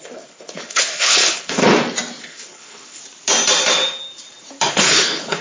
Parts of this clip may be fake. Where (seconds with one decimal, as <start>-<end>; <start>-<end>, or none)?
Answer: 0.0-1.6; 2.2-3.0; 4.7-5.4